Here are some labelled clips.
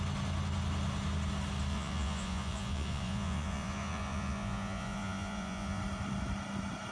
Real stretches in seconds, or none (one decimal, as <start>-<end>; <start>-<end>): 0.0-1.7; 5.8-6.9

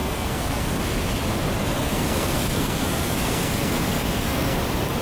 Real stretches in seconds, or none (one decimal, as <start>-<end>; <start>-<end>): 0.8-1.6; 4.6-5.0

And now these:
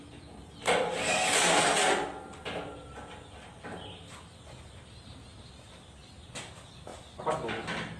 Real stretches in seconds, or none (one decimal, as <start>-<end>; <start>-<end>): 0.0-8.0

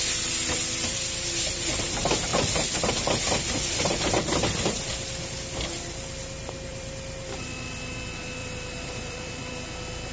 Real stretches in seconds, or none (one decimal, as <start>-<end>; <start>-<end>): 0.0-2.3; 2.9-6.7; 7.6-8.4; 9.5-10.1

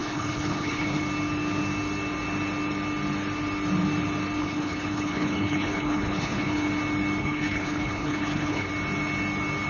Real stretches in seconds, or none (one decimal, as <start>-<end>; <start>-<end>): 1.0-4.4; 6.7-7.2; 8.7-9.7